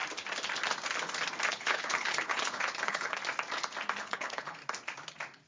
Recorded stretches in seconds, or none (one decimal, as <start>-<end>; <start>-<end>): 0.0-1.5; 3.2-4.0; 4.6-5.5